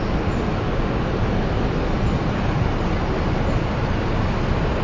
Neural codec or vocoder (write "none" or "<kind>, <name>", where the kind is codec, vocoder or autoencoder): none